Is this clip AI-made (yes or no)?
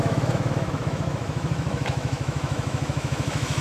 yes